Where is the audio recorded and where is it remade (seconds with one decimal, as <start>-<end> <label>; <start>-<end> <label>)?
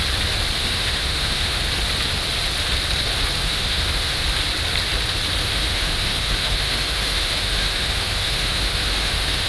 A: 0.0-0.6 recorded; 0.6-1.6 remade; 1.6-3.4 recorded; 3.4-4.2 remade; 4.2-5.4 recorded; 5.4-9.5 remade